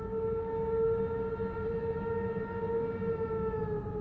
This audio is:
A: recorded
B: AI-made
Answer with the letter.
A